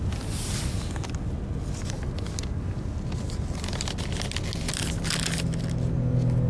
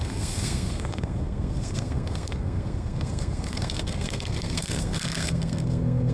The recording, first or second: first